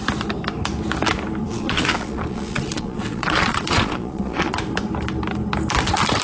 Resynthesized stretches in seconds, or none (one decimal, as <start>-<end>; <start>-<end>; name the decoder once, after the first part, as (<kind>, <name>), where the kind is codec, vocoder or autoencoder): 1.4-4.6 (vocoder, Vocos)